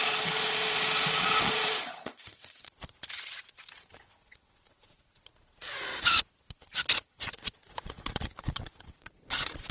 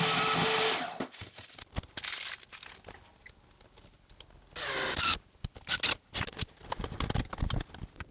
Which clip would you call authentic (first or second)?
second